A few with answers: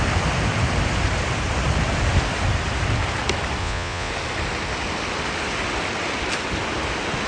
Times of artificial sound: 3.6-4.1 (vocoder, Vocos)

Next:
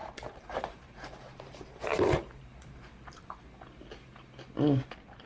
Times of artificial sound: 0.0-3.2 (vocoder, BigVGAN v2)

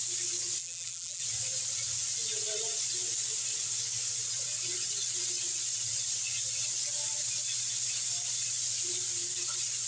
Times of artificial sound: 0.6-1.2 (vocoder, BigVGAN v2)

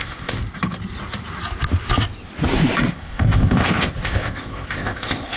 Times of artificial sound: 0.0-0.4 (codec, ZipCodec); 2.9-5.4

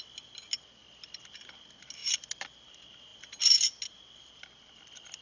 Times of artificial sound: none

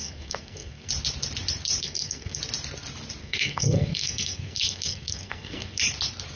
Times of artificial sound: 0.0-0.9 (codec, SNAC); 1.8-2.4; 3.2-5.8

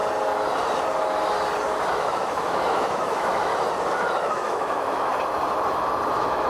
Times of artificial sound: 1.9-3.5 (autoencoder, DAC-VAE); 4.3-5.1; 6.1-6.5

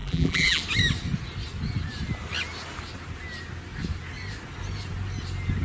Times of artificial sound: 0.0-0.6 (vocoder, BigVGAN v2)